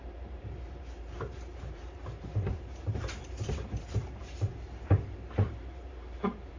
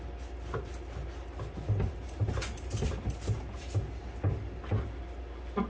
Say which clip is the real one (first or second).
second